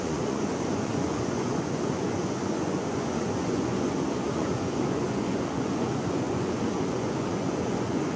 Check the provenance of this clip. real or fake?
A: fake